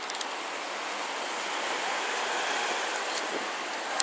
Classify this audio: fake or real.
real